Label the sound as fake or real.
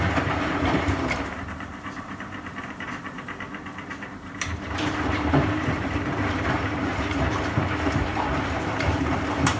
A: fake